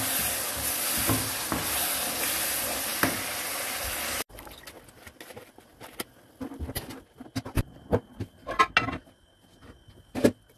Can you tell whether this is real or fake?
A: real